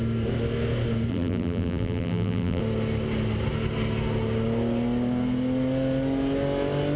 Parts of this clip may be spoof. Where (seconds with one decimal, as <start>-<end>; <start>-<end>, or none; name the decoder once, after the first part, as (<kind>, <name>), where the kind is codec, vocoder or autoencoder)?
1.1-2.6 (vocoder, BigVGAN v2)